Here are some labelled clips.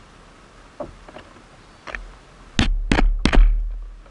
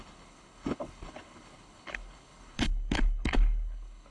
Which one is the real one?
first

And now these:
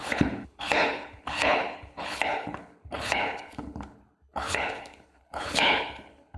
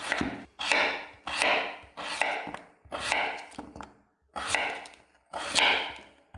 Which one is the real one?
second